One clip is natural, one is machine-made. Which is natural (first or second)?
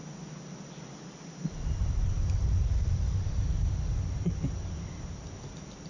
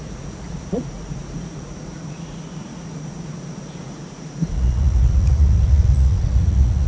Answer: first